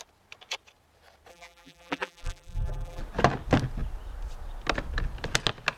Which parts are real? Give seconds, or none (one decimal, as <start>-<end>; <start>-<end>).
0.0-1.3; 3.0-5.8